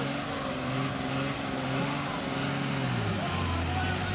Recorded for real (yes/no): yes